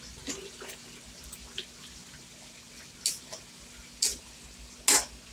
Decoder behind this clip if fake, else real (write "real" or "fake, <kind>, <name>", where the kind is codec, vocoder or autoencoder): real